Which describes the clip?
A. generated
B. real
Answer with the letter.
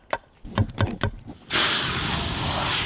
B